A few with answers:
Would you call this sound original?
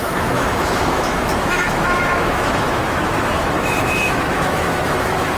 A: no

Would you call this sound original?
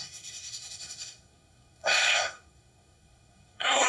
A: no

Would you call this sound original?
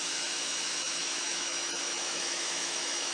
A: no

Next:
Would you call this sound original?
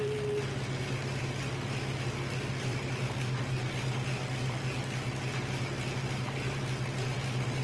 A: yes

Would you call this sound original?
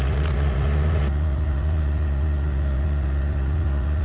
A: no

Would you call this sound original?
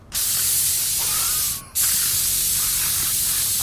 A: yes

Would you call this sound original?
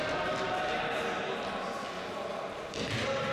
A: yes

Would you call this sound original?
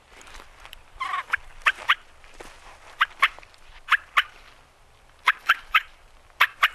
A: no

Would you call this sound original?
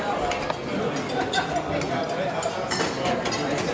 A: yes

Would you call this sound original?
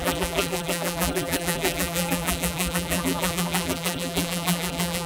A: no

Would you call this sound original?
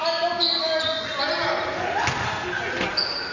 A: yes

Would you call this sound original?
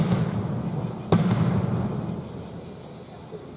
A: yes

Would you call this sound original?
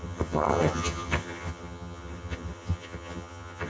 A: no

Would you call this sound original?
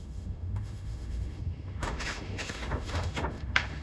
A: no